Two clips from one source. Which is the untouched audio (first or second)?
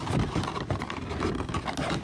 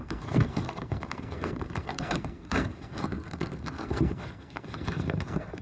first